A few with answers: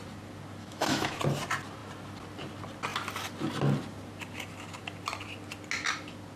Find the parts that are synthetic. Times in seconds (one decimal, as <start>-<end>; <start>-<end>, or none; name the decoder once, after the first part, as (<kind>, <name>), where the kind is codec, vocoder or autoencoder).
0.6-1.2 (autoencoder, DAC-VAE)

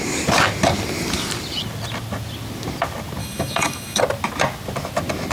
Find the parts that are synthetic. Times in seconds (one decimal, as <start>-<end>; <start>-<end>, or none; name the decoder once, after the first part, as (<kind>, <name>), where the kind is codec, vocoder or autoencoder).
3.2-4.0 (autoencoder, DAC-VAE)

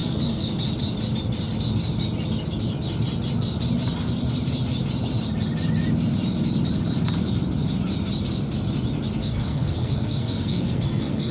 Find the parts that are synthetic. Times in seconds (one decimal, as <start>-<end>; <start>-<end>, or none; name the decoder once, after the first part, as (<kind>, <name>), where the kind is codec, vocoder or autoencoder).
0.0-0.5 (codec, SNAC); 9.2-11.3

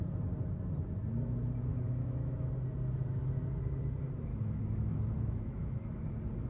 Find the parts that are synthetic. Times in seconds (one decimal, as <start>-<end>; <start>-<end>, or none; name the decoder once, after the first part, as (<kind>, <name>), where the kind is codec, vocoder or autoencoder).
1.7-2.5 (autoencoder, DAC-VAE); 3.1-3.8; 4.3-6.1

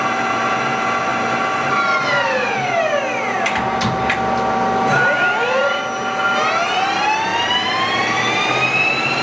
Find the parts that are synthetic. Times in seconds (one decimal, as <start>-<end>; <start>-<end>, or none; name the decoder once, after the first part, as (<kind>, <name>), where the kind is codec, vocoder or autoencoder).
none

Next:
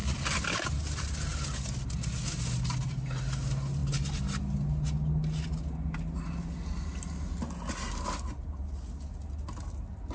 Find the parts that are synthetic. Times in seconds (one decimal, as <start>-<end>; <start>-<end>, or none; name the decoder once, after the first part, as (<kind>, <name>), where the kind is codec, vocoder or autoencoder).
0.0-0.8 (vocoder, BigVGAN v2)